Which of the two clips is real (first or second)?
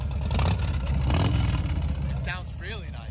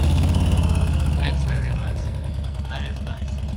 first